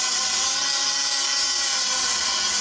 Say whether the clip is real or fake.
real